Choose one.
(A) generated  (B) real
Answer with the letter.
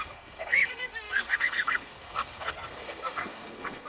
A